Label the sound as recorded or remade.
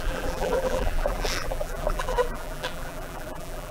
remade